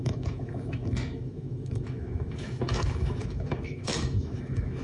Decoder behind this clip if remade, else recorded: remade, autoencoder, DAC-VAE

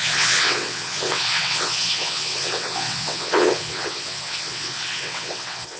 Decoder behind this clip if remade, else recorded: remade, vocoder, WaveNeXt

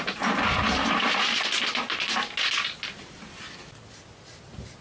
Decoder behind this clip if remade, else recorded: recorded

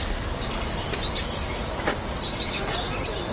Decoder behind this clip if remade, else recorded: recorded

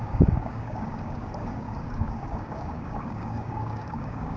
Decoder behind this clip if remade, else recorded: remade, codec, DAC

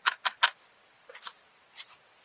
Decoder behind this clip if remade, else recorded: recorded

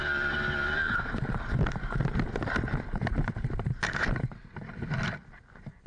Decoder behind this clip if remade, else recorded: recorded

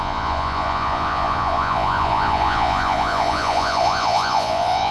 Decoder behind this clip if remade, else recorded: remade, vocoder, Vocos